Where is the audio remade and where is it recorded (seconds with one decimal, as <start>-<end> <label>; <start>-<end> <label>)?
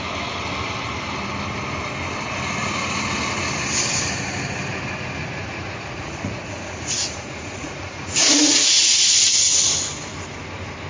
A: 0.0-5.2 recorded; 5.2-8.9 remade; 8.9-10.9 recorded